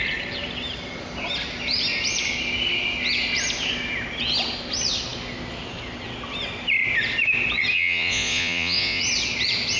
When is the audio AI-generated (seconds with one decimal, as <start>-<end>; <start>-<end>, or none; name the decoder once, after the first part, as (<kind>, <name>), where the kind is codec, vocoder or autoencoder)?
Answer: 7.7-9.0 (vocoder, Vocos)